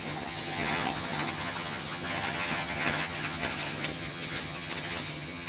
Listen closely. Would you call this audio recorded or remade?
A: remade